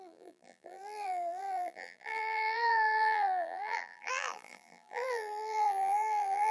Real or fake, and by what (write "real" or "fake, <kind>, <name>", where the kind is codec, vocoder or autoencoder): fake, vocoder, BigVGAN v2